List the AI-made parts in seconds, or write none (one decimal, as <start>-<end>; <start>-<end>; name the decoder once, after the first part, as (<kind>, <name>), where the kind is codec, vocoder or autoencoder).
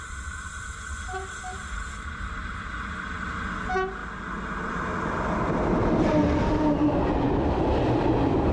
none